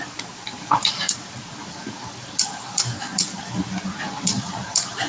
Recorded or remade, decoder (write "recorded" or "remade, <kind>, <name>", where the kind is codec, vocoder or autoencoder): recorded